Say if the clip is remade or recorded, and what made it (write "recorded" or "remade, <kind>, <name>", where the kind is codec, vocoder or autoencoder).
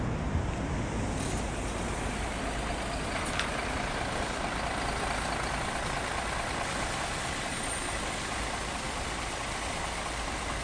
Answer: recorded